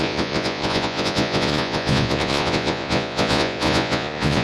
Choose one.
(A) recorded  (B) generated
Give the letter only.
B